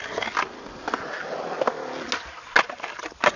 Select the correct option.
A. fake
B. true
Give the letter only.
B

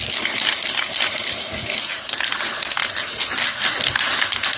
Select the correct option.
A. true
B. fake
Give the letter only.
A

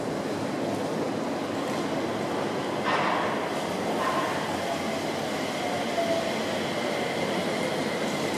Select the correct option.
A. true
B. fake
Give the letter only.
A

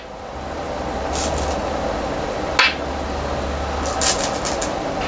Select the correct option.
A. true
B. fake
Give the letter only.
A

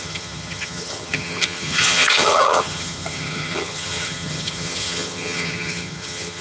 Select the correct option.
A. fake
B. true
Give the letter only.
A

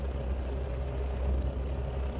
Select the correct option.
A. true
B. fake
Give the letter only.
A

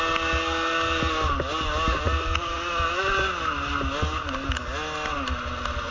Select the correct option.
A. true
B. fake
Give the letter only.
A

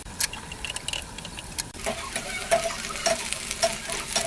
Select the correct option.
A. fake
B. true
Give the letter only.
B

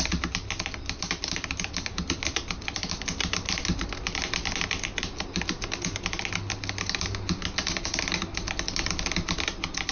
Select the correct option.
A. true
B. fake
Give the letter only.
A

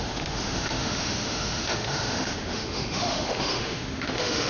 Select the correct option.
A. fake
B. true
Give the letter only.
A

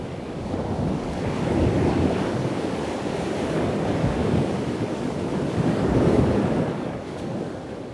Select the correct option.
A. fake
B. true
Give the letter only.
A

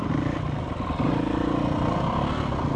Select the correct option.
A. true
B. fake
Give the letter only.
A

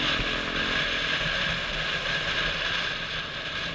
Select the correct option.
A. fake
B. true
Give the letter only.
B